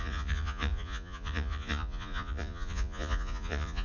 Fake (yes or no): yes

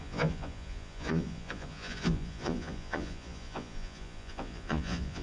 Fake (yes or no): yes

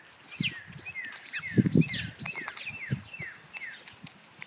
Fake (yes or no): no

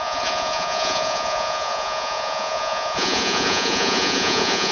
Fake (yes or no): yes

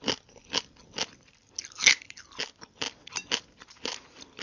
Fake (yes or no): no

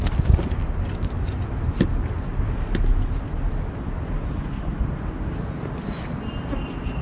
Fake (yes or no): no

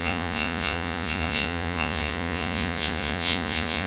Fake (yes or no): yes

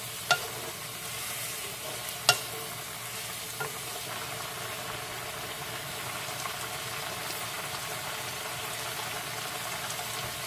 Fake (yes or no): no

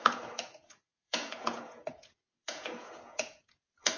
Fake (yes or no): yes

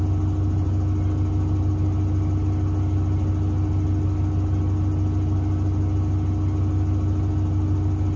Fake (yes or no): no